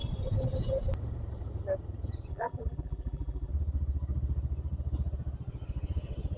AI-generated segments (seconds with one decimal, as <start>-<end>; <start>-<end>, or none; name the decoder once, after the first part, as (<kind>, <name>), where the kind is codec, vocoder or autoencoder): 2.3-3.5 (vocoder, BigVGAN v2)